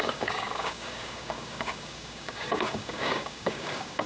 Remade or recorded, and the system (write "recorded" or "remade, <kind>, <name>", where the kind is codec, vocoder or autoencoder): remade, codec, DAC